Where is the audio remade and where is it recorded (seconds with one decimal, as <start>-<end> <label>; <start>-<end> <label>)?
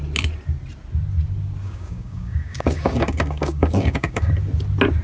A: 0.0-1.6 recorded; 1.6-4.3 remade; 4.3-5.0 recorded